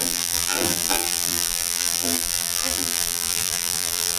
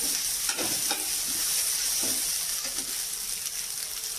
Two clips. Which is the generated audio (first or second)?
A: first